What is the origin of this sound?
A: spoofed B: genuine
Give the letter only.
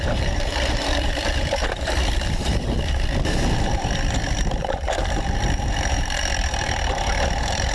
A